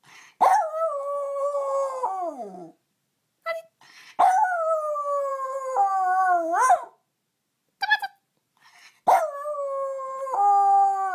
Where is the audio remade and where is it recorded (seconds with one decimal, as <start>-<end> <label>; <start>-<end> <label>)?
0.0-11.1 recorded